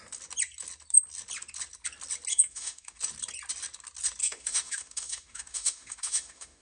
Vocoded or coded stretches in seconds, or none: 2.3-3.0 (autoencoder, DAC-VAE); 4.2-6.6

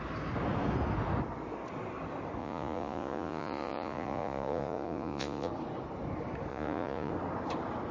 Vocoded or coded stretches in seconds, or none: 2.4-5.5 (vocoder, Vocos); 6.5-7.1

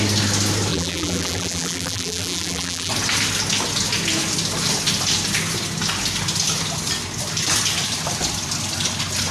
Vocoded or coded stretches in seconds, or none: 0.7-2.9 (vocoder, BigVGAN v2)

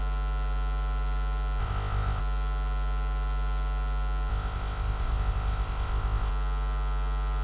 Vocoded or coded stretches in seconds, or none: 1.6-2.2 (codec, ZipCodec); 4.3-6.3